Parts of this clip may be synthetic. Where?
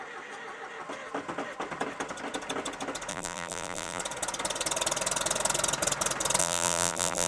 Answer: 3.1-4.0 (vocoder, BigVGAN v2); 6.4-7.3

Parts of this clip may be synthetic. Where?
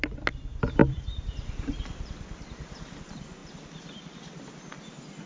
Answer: 0.8-3.0 (vocoder, BigVGAN v2)